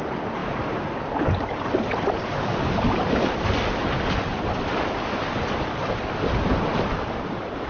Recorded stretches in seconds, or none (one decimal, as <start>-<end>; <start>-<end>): 0.0-7.7

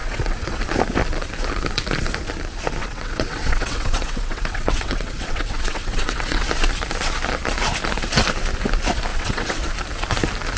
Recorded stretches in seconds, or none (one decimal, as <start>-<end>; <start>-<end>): 0.6-2.8; 6.5-9.1; 9.7-10.6

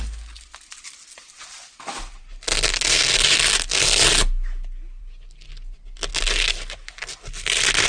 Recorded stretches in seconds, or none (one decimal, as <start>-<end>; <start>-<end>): 0.0-7.9

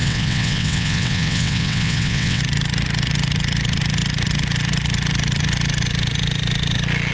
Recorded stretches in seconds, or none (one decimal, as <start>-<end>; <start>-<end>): 2.4-7.1

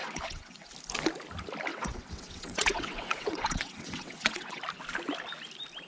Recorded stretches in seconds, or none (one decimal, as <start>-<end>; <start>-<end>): 0.7-1.7; 4.6-5.9

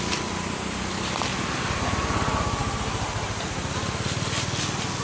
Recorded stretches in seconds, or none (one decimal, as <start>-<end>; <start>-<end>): 0.0-5.0

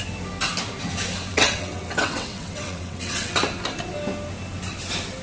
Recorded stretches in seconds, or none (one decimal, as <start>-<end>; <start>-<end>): 0.0-1.3; 3.4-5.2